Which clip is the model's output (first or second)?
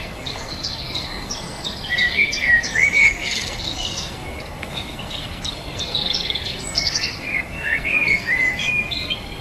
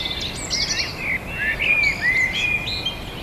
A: first